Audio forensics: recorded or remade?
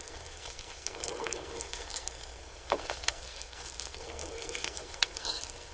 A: remade